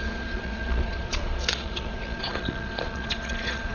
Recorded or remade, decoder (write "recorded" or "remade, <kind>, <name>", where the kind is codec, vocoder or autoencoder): remade, vocoder, Vocos